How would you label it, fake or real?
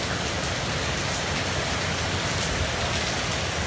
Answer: real